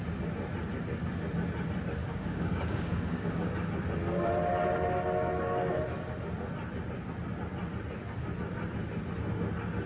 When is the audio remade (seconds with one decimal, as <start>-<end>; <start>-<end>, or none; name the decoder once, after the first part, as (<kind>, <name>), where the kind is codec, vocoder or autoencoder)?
2.0-3.5 (codec, DAC)